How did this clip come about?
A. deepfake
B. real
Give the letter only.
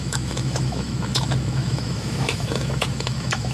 A